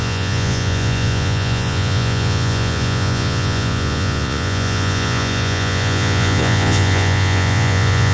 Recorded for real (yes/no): no